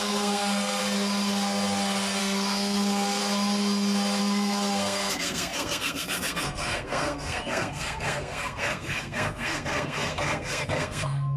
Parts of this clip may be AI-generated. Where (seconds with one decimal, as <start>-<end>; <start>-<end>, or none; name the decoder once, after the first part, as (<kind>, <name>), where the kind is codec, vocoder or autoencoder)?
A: 0.0-0.8 (codec, SNAC); 2.2-3.2; 4.2-11.4